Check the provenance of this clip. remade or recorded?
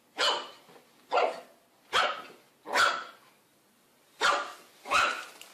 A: recorded